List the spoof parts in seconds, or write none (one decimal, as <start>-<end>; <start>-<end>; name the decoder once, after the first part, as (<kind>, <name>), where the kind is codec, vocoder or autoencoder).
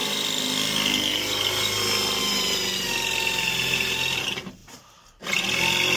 none